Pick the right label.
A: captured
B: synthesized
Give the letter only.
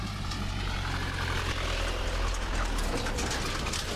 A